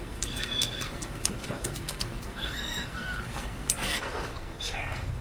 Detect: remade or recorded remade